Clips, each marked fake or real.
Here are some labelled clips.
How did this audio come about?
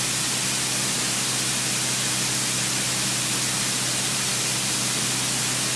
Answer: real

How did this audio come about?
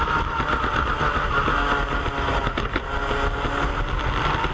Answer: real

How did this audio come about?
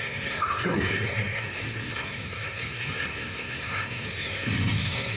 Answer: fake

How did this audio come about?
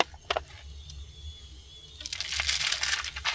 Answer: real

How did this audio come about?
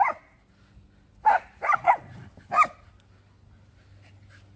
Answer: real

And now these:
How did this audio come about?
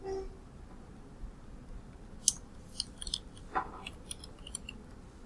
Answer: real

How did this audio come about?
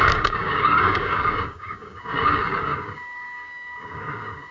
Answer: fake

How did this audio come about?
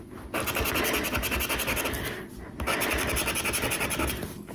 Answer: real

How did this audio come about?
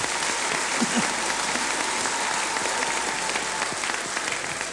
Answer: real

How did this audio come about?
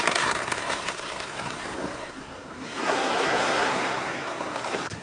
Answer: fake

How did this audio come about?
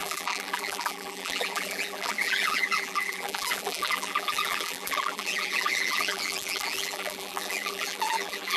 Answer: fake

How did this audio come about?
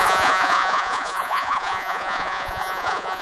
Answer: fake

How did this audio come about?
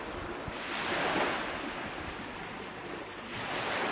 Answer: real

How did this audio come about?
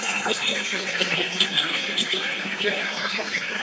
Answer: fake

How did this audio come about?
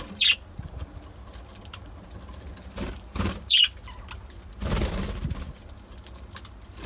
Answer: real